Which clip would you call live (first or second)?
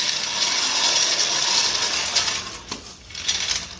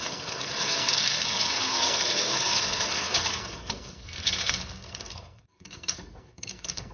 first